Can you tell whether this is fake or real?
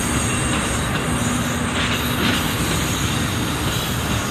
real